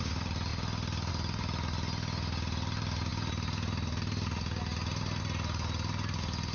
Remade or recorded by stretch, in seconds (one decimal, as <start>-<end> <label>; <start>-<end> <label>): 0.0-6.5 recorded